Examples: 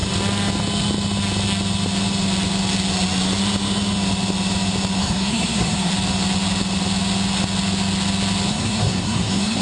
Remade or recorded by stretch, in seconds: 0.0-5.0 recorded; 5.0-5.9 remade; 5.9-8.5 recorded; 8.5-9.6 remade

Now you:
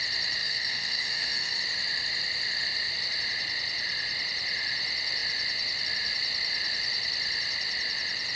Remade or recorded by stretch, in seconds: 0.0-0.4 recorded; 0.4-1.6 remade; 1.6-8.4 recorded

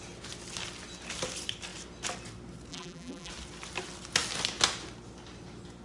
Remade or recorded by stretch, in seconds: 0.0-2.7 recorded; 2.7-3.3 remade; 3.3-5.8 recorded

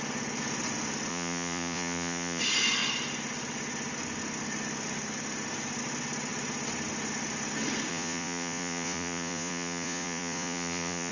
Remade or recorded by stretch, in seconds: 0.0-1.1 recorded; 1.1-2.4 remade; 2.4-7.9 recorded; 7.9-11.1 remade